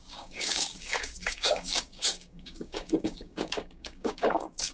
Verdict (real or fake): fake